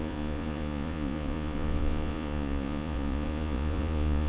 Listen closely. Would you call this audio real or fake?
fake